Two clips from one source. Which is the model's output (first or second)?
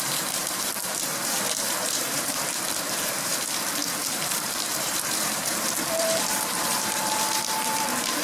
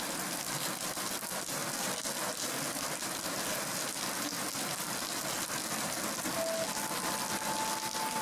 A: first